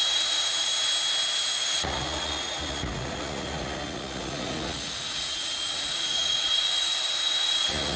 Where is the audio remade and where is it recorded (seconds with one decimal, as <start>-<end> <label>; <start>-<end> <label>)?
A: 0.0-0.7 remade; 0.7-1.4 recorded; 1.4-8.0 remade